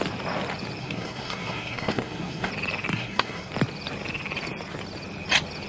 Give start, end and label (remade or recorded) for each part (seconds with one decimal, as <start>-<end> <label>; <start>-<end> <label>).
0.0-0.8 recorded; 0.8-2.5 remade; 2.5-2.9 recorded; 2.9-3.5 remade; 3.5-5.7 recorded